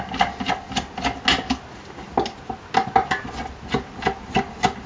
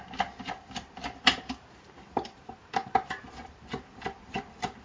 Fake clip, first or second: second